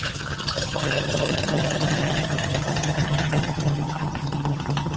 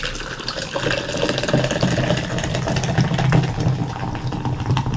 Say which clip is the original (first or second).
second